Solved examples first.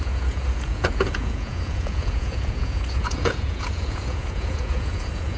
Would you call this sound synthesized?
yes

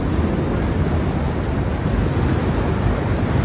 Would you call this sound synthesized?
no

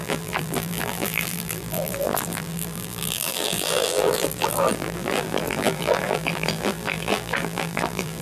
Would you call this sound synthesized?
yes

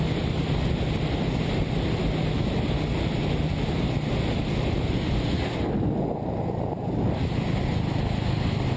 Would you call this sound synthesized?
no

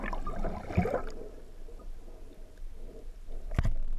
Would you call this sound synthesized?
no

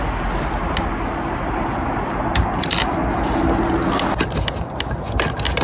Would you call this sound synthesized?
no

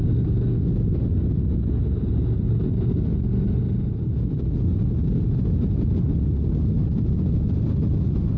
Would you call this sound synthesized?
no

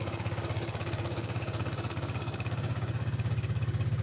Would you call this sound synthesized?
yes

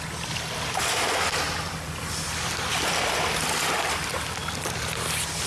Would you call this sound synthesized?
no